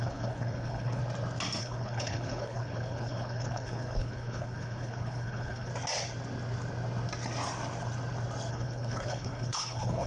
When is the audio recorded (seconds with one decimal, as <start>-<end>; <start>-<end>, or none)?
1.0-1.6; 5.7-8.5